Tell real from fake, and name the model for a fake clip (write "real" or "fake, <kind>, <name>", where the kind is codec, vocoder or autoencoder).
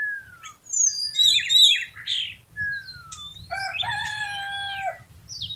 real